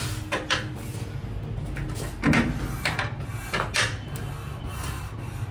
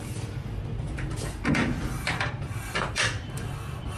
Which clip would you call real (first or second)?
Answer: first